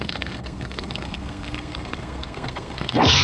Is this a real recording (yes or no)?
no